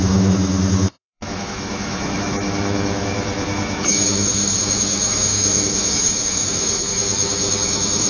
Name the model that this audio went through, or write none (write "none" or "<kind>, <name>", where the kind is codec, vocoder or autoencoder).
autoencoder, DAC-VAE